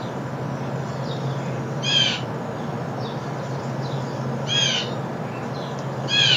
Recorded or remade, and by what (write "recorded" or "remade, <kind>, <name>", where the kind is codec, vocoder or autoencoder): recorded